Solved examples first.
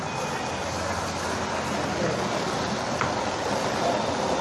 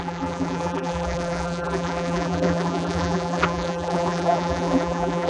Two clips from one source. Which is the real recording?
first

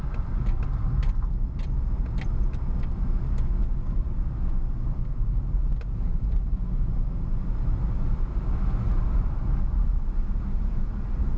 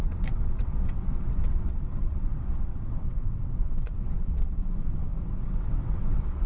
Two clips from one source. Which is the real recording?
first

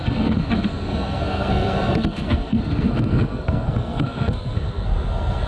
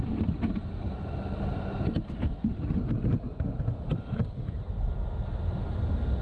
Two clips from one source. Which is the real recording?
second